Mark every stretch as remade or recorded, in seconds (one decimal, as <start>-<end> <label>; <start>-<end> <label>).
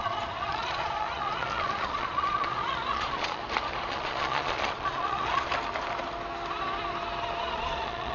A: 0.0-3.4 remade; 3.4-3.9 recorded; 3.9-5.5 remade; 5.5-7.4 recorded; 7.4-8.1 remade